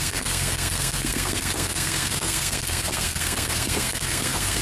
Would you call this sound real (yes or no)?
no